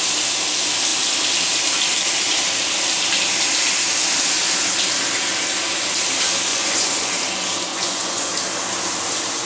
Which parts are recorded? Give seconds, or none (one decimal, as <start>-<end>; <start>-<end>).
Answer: 0.0-6.5; 7.1-7.7; 8.3-9.5